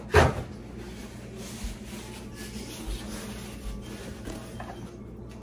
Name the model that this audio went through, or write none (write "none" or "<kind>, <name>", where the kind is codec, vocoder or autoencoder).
none